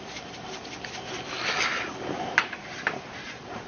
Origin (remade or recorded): recorded